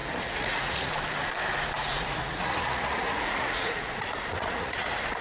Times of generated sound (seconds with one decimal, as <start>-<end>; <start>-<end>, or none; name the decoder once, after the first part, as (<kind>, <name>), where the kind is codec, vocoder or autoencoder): 0.0-0.9 (vocoder, Vocos); 1.8-5.2